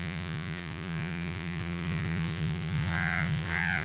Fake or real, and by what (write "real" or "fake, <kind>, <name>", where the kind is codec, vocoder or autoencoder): fake, vocoder, Vocos